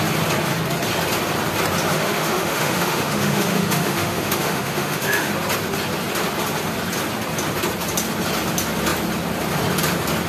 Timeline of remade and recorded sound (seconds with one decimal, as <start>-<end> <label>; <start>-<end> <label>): 0.0-1.9 recorded; 1.9-5.3 remade; 5.3-10.3 recorded